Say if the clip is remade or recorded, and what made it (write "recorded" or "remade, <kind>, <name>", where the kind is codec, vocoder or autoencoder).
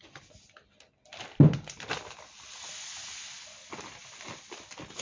recorded